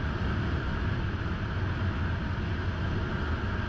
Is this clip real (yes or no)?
yes